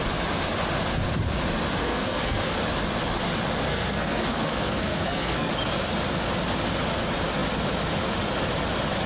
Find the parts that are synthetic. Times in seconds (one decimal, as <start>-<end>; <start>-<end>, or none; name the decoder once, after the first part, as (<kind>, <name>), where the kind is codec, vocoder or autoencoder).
1.8-2.6 (codec, SNAC); 3.7-5.5